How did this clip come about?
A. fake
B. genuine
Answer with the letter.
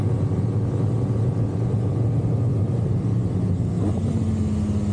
B